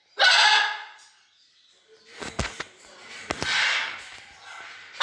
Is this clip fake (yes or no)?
no